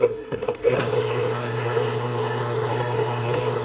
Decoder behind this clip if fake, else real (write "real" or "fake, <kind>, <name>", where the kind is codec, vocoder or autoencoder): fake, codec, SNAC